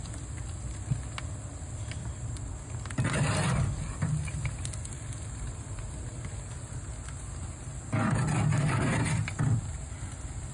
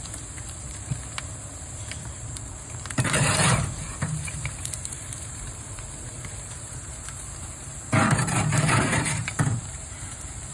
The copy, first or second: second